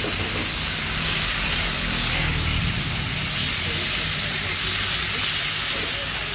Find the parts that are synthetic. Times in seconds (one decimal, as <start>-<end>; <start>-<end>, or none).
0.4-2.6